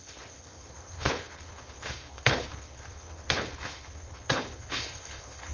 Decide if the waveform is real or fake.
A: fake